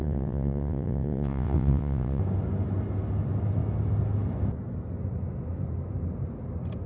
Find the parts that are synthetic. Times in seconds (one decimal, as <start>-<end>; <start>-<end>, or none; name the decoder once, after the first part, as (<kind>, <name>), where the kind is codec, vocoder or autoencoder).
0.0-2.2 (vocoder, WaveNeXt)